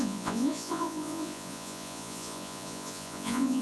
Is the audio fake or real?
fake